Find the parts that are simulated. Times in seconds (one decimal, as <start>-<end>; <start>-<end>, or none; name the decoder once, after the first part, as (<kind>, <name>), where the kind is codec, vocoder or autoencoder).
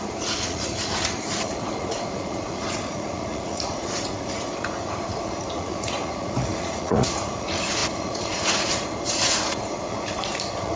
0.0-10.8 (vocoder, Vocos)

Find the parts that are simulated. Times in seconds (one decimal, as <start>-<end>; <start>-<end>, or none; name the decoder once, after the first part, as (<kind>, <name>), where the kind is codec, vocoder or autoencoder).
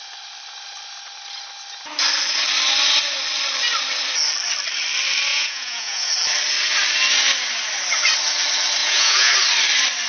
5.3-6.1 (vocoder, Vocos); 8.8-9.3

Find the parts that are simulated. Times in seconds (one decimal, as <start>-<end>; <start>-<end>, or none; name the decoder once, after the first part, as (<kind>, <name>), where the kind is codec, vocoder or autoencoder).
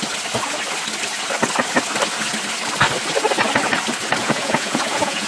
4.2-5.3 (vocoder, Vocos)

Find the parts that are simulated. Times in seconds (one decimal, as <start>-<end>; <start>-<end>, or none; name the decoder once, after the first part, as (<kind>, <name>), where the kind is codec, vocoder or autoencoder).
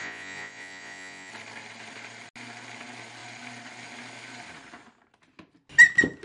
0.0-1.3 (vocoder, Vocos)